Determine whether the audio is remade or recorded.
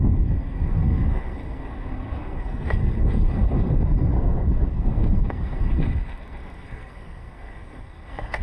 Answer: remade